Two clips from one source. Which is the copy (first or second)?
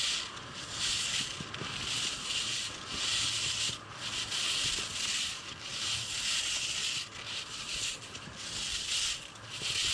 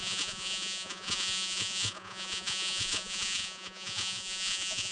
second